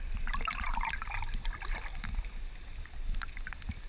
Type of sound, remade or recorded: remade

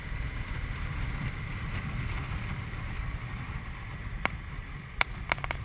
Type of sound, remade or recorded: recorded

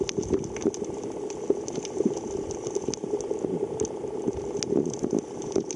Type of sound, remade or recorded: recorded